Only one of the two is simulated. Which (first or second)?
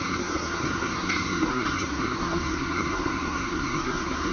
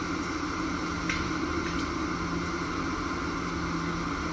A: first